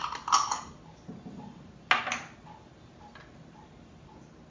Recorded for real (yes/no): yes